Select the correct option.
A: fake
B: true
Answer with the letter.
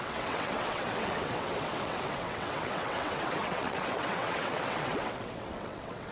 A